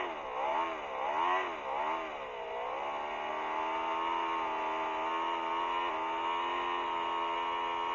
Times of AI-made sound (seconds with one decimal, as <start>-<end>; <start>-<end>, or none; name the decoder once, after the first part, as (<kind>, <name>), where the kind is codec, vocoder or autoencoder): none